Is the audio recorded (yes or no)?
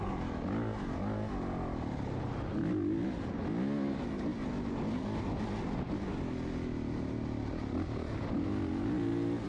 yes